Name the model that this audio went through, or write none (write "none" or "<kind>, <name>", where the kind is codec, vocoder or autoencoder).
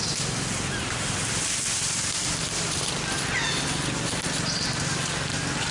none